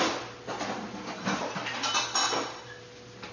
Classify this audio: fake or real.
real